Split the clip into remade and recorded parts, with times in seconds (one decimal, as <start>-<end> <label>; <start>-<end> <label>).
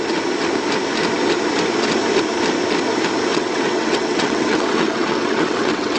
0.0-3.3 recorded; 3.3-6.0 remade